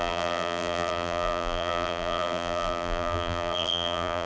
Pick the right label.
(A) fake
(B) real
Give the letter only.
A